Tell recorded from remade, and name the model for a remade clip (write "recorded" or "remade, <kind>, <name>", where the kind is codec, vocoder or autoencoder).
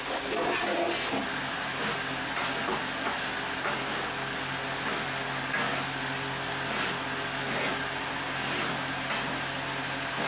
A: recorded